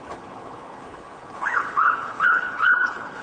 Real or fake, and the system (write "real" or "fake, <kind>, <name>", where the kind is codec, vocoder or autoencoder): fake, codec, HILCodec